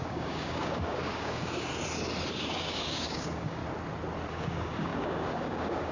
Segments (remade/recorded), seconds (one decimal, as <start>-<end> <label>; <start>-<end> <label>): 0.0-1.7 remade; 1.7-2.3 recorded; 2.3-3.6 remade; 3.6-4.3 recorded; 4.3-5.9 remade